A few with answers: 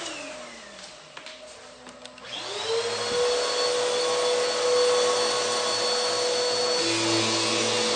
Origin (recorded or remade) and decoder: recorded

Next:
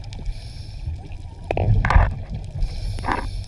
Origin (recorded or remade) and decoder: recorded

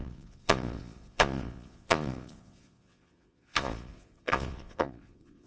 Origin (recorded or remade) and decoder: remade, vocoder, Vocos